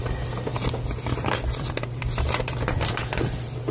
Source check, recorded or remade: recorded